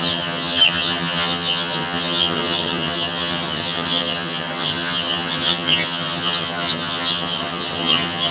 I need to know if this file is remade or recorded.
remade